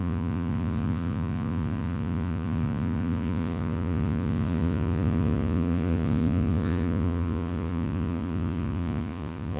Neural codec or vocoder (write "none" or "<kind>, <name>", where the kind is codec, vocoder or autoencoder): vocoder, Vocos